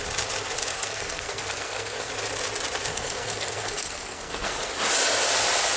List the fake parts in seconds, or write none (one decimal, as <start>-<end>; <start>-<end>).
0.7-2.1; 2.9-4.7